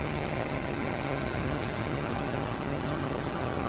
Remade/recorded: remade